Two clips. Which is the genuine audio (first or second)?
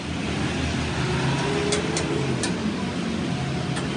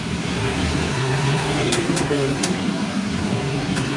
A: first